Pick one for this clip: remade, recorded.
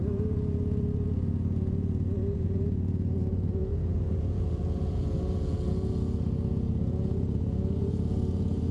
remade